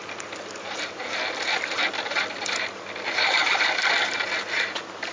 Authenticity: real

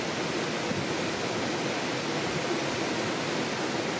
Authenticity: real